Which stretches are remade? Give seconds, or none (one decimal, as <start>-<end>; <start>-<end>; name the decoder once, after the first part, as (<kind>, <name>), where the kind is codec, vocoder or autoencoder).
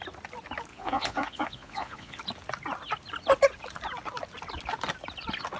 0.7-2.2 (vocoder, Vocos)